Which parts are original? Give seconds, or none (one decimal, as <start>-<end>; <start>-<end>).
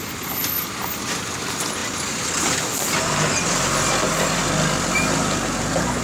0.0-6.0